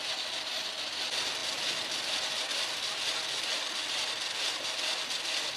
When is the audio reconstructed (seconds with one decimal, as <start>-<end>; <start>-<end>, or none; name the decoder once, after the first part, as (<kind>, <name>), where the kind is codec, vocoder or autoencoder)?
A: none